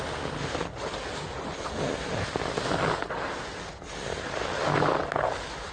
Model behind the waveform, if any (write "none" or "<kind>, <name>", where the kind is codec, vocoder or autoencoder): none